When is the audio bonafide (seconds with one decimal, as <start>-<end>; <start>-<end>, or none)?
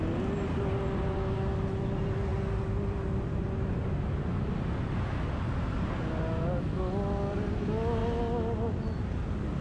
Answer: 0.0-9.6